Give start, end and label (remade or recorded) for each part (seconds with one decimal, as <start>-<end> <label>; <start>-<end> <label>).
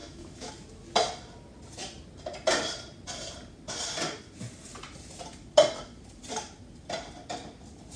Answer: 0.0-0.5 remade; 0.5-8.0 recorded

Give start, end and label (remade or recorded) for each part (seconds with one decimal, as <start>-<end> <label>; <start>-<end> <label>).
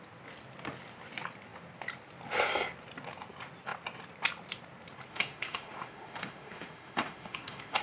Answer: 0.0-5.1 recorded; 5.1-7.8 remade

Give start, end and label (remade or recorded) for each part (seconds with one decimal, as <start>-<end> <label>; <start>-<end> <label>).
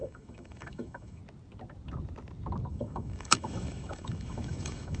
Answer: 0.0-1.2 remade; 1.2-2.7 recorded; 2.7-5.0 remade